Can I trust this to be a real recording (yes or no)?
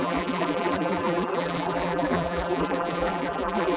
no